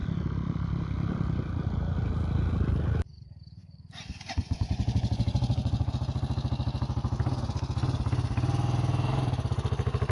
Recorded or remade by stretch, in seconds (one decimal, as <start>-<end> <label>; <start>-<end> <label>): 0.0-3.6 recorded; 3.6-5.9 remade; 5.9-10.1 recorded